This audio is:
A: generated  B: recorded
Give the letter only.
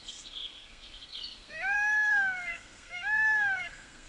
A